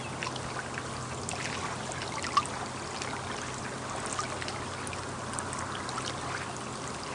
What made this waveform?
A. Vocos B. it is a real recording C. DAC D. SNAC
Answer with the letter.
B